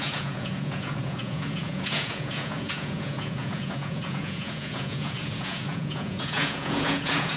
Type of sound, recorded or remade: remade